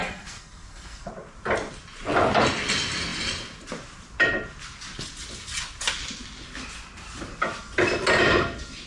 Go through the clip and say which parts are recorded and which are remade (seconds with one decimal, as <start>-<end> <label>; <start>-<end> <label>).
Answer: 0.0-1.1 remade; 1.1-8.9 recorded